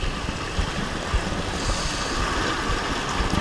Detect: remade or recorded recorded